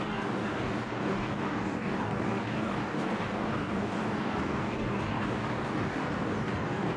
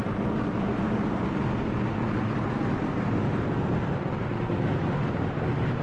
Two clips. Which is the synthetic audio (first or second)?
first